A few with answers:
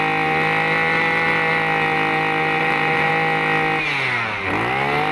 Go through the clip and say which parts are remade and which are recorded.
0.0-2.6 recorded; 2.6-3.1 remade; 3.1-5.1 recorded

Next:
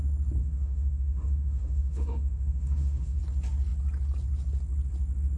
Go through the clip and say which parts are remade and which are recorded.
0.0-0.4 recorded; 0.4-3.2 remade; 3.2-5.4 recorded

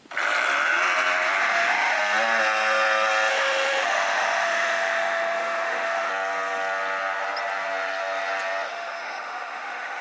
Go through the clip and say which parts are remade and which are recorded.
0.0-1.4 recorded; 1.4-2.0 remade; 2.0-3.3 recorded; 3.3-6.1 remade; 6.1-8.7 recorded; 8.7-10.0 remade

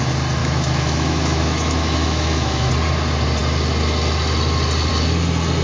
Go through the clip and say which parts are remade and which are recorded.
0.0-0.4 recorded; 0.4-2.7 remade; 2.7-5.6 recorded

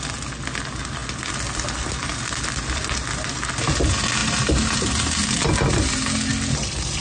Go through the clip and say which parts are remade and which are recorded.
0.0-7.0 recorded

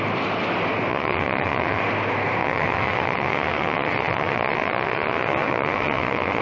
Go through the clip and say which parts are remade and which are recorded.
0.0-0.9 recorded; 0.9-1.8 remade; 1.8-2.4 recorded; 2.4-6.4 remade

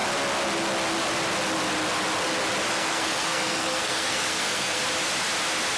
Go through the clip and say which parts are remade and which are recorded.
0.0-2.7 recorded; 2.7-4.8 remade; 4.8-5.8 recorded